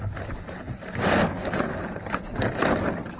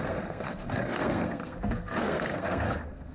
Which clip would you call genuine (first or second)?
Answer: first